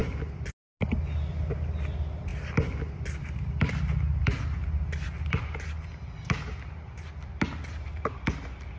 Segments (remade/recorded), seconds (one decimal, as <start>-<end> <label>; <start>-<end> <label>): 0.0-8.8 recorded

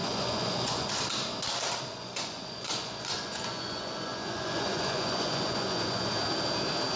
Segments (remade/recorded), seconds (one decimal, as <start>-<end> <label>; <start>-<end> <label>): 0.0-0.9 remade; 0.9-1.9 recorded; 1.9-6.1 remade; 6.1-7.0 recorded

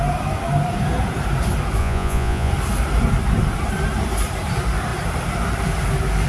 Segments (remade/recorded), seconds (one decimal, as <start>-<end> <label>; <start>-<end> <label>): 0.0-1.8 recorded; 1.8-2.5 remade; 2.5-6.3 recorded

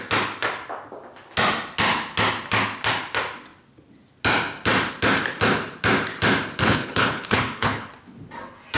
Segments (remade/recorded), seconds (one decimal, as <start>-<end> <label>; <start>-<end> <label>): 0.0-6.6 recorded; 6.6-7.9 remade; 7.9-8.8 recorded

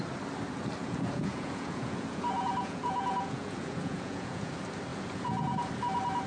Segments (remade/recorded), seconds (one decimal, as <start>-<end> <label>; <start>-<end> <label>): 0.0-0.8 recorded; 0.8-4.5 remade; 4.5-4.9 recorded; 4.9-5.7 remade; 5.7-6.3 recorded

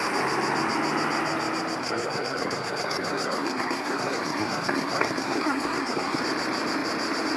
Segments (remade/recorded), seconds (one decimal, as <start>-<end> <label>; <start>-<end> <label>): 0.0-1.8 recorded; 1.8-6.2 remade; 6.2-7.4 recorded